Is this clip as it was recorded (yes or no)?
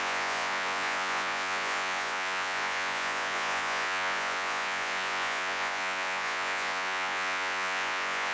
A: no